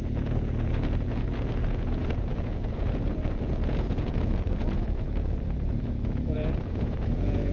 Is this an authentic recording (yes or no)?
no